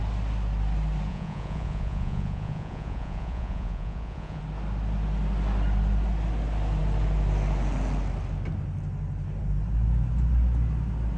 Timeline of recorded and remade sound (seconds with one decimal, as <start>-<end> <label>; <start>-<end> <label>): 0.0-1.1 recorded; 1.1-4.4 remade; 4.4-11.2 recorded